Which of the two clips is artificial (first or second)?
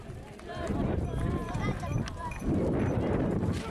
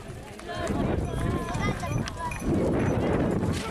first